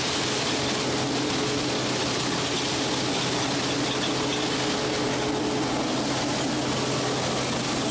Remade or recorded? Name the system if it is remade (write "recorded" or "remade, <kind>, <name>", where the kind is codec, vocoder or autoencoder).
recorded